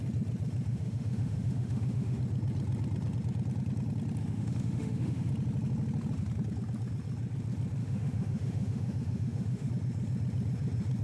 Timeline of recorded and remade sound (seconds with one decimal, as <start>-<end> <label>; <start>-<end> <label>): 0.0-0.7 recorded; 0.7-2.2 remade; 2.2-4.2 recorded; 4.2-5.3 remade; 5.3-7.8 recorded; 7.8-9.7 remade; 9.7-11.0 recorded